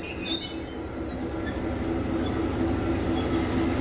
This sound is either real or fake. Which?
real